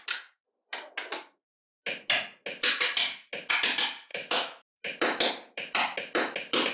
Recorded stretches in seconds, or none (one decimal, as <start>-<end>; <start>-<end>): 0.0-4.1; 4.8-6.7